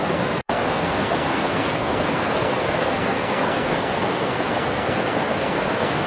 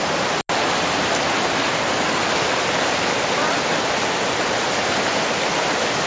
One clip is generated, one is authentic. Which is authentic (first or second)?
second